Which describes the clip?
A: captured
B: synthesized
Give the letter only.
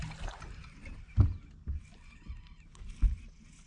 A